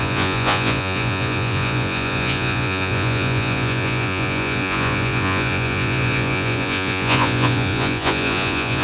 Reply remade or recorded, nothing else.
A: remade